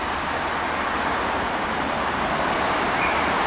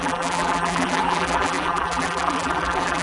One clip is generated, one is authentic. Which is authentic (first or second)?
first